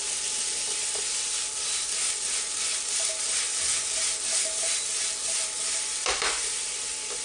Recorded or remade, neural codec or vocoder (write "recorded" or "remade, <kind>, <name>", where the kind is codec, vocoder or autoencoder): recorded